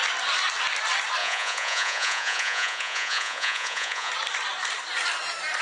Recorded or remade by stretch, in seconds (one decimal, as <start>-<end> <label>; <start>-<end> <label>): 0.0-1.2 recorded; 1.2-4.1 remade; 4.1-5.6 recorded